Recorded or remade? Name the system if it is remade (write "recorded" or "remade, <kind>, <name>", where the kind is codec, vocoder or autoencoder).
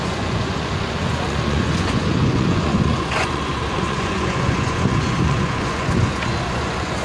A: remade, vocoder, Vocos